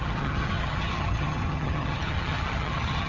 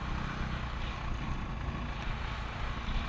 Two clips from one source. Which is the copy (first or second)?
first